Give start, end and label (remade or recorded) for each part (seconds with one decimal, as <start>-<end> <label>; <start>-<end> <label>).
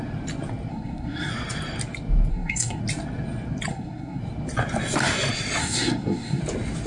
0.0-0.7 recorded; 0.7-1.3 remade; 1.3-2.3 recorded; 2.3-2.8 remade; 2.8-3.7 recorded; 3.7-4.2 remade; 4.2-5.6 recorded; 5.6-6.4 remade; 6.4-6.9 recorded